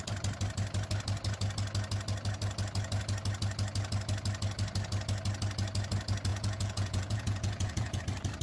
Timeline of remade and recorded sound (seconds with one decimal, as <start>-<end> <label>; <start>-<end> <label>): 0.0-6.3 recorded; 6.3-8.0 remade; 8.0-8.4 recorded